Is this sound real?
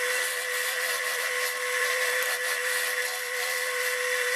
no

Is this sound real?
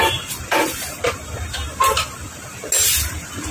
yes